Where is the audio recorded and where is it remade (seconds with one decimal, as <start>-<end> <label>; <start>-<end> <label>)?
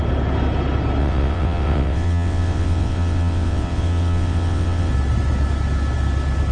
0.0-1.0 recorded; 1.0-4.9 remade; 4.9-6.5 recorded